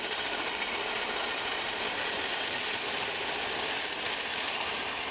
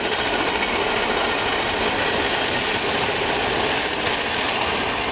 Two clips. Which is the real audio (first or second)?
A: second